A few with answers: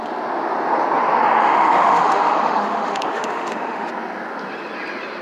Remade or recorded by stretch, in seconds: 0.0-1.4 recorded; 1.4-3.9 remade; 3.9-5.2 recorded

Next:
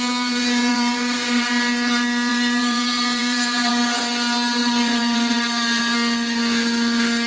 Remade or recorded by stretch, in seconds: 0.0-0.7 recorded; 0.7-1.5 remade; 1.5-2.3 recorded; 2.3-3.7 remade; 3.7-4.6 recorded; 4.6-5.8 remade; 5.8-7.3 recorded

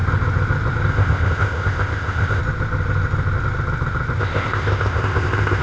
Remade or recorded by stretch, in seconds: 0.0-0.9 recorded; 0.9-2.4 remade; 2.4-4.2 recorded; 4.2-5.6 remade

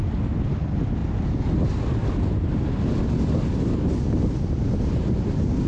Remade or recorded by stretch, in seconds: 0.0-5.7 recorded

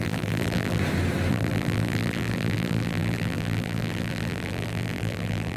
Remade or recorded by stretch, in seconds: 0.0-0.8 remade; 0.8-1.3 recorded; 1.3-5.6 remade

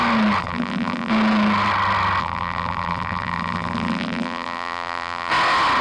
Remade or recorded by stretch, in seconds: 0.0-0.4 recorded; 0.4-1.1 remade; 1.1-2.2 recorded; 2.2-5.3 remade; 5.3-5.8 recorded